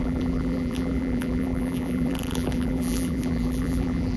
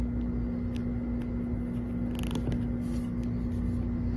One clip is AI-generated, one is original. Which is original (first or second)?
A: second